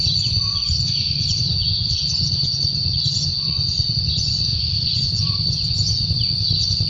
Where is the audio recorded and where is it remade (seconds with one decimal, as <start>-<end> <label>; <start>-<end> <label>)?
0.0-0.6 recorded; 0.6-3.9 remade; 3.9-4.5 recorded; 4.5-5.2 remade; 5.2-6.9 recorded